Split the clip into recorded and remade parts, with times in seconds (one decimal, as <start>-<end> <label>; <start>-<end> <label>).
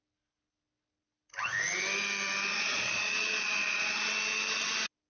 0.0-2.5 recorded; 2.5-4.0 remade; 4.0-5.1 recorded